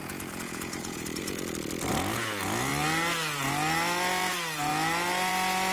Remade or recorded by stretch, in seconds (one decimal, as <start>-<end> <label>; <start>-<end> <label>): 0.0-1.4 remade; 1.4-5.7 recorded